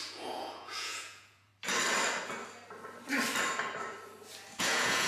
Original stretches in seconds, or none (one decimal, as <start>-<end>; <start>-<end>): 1.5-4.6